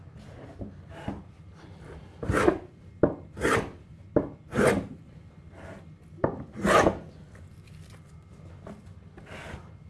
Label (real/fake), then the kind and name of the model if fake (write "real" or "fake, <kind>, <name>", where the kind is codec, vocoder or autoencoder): real